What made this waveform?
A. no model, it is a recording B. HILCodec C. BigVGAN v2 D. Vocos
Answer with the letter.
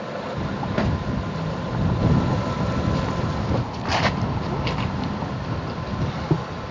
A